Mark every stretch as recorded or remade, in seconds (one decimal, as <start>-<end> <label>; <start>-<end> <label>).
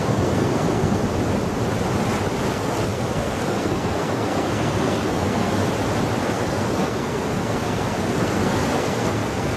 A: 0.0-1.0 remade; 1.0-2.5 recorded; 2.5-5.6 remade; 5.6-6.2 recorded; 6.2-9.6 remade